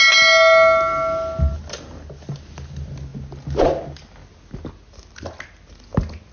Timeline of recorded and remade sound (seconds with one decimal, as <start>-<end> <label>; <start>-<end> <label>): 0.0-6.3 recorded